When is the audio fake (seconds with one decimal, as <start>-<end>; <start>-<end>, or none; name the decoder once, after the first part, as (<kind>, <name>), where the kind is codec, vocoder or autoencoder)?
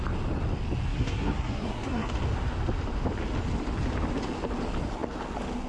0.9-2.1 (codec, SNAC)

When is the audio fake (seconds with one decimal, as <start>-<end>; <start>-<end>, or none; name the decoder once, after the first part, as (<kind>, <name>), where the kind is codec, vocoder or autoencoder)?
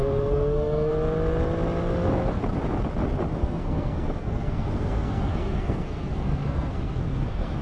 0.0-0.9 (codec, SNAC); 3.4-7.6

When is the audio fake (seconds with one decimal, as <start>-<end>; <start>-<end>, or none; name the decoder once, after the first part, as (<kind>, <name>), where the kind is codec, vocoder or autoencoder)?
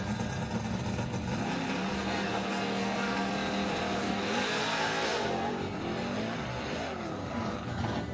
1.9-3.3 (codec, SNAC); 4.0-5.5